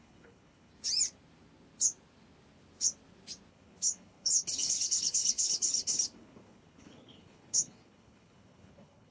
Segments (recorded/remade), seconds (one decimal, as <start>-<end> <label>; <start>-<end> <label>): 0.0-0.7 remade; 0.7-3.5 recorded; 3.5-9.1 remade